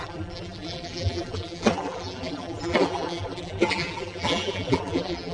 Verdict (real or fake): fake